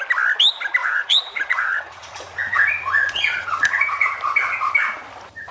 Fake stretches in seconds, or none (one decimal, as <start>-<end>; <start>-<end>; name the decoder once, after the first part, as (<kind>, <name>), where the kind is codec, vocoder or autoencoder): 0.8-4.1 (vocoder, Vocos)